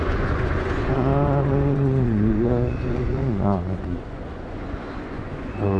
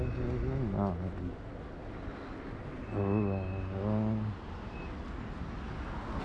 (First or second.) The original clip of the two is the second